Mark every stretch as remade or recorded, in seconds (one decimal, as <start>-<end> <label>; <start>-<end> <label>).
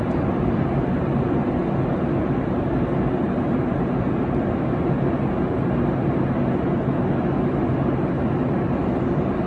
0.0-9.5 recorded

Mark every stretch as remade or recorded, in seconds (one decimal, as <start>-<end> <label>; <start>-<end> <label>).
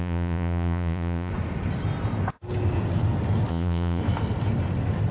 0.0-1.3 remade; 1.3-3.5 recorded; 3.5-4.0 remade; 4.0-5.1 recorded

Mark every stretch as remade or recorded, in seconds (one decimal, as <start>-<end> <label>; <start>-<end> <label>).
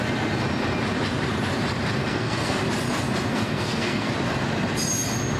0.0-2.0 recorded; 2.0-2.6 remade; 2.6-3.3 recorded; 3.3-4.1 remade; 4.1-5.4 recorded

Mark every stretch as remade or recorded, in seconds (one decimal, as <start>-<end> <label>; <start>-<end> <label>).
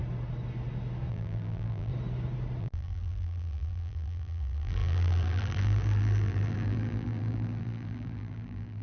0.0-1.1 recorded; 1.1-1.9 remade; 1.9-2.6 recorded; 2.6-8.8 remade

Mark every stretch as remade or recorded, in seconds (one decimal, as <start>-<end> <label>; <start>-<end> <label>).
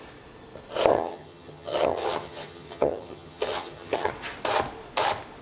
0.0-0.9 recorded; 0.9-4.1 remade; 4.1-5.4 recorded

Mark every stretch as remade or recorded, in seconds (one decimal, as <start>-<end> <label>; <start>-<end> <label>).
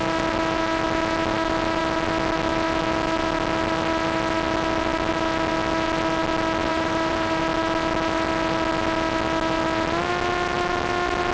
0.0-6.7 recorded; 6.7-7.4 remade; 7.4-11.3 recorded